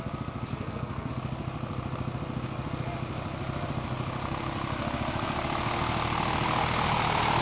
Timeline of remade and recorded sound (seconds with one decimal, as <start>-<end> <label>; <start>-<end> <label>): 0.0-0.5 recorded; 0.5-1.1 remade; 1.1-7.4 recorded